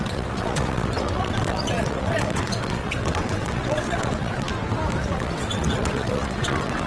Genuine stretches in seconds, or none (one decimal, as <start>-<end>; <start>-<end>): 4.5-5.0